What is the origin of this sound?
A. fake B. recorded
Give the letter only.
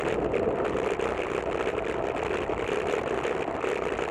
B